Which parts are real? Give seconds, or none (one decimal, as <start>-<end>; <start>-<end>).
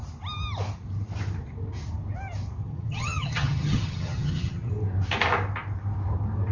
0.0-2.6; 4.7-6.5